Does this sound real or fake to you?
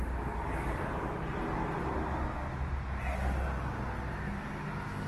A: real